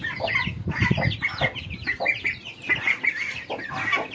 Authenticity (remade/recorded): recorded